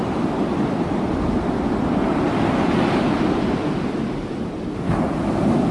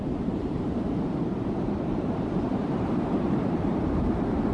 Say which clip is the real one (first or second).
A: first